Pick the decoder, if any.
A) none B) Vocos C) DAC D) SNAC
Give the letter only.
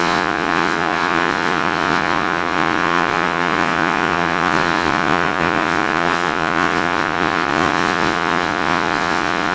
B